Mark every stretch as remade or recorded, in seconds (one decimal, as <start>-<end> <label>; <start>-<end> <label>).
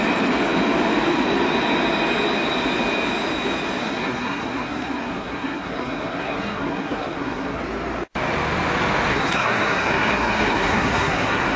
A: 0.0-3.8 recorded; 3.8-7.6 remade; 7.6-9.1 recorded; 9.1-11.6 remade